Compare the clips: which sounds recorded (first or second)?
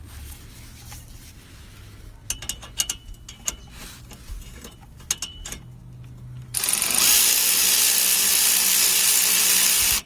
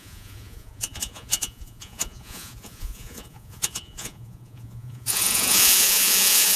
first